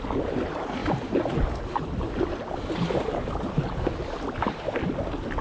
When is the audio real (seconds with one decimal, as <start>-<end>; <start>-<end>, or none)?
0.0-5.4